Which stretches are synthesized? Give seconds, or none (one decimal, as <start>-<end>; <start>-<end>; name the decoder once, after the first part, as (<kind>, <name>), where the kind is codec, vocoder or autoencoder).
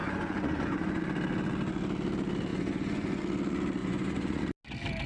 0.0-1.0 (vocoder, Vocos); 2.5-3.2; 3.8-4.4